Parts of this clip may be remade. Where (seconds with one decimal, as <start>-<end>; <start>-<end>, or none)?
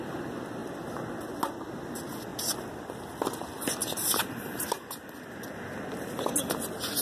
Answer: 2.3-3.2; 3.8-5.2